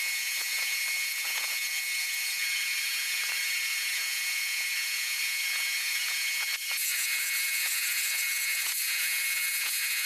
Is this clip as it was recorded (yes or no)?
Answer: no